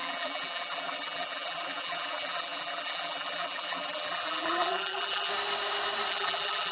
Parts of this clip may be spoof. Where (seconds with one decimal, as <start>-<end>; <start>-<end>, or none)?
0.0-5.3; 6.1-6.7